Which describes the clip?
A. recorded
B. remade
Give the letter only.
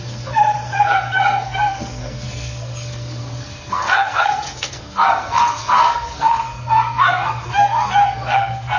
B